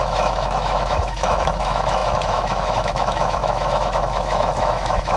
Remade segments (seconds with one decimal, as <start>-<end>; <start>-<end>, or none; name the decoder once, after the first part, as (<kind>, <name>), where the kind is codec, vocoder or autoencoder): 0.0-5.2 (autoencoder, DAC-VAE)